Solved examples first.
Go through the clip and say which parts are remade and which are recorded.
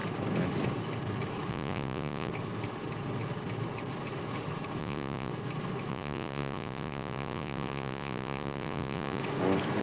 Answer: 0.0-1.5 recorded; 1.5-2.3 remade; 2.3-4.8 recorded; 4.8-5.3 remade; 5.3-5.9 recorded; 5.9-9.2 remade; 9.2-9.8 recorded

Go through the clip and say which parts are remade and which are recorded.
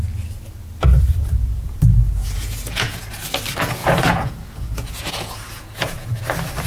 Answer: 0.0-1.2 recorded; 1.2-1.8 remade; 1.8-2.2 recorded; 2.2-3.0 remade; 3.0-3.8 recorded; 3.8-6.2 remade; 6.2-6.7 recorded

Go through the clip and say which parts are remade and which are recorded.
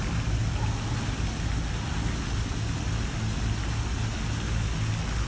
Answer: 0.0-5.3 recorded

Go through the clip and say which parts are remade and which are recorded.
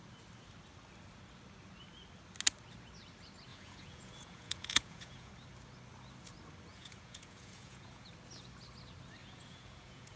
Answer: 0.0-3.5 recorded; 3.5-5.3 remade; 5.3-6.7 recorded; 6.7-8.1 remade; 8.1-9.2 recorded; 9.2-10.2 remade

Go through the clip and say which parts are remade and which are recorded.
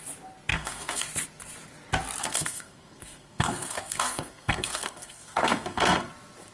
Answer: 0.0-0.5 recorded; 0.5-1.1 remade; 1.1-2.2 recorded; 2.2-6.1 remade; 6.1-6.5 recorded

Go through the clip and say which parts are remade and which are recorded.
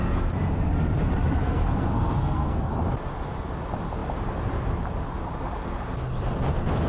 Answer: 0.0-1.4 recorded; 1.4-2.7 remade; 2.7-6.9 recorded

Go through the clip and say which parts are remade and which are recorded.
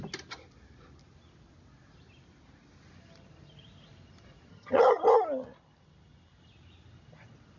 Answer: 0.0-4.5 recorded; 4.5-5.1 remade; 5.1-7.6 recorded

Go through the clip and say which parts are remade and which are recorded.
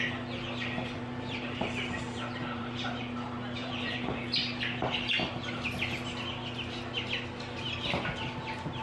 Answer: 0.0-1.1 recorded; 1.1-3.0 remade; 3.0-3.6 recorded; 3.6-4.2 remade; 4.2-8.8 recorded